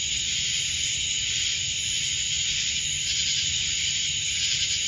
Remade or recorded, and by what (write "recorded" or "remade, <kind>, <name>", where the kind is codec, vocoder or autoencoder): remade, vocoder, BigVGAN v2